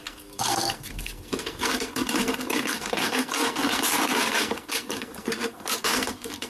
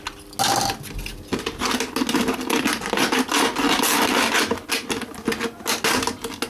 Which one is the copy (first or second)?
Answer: first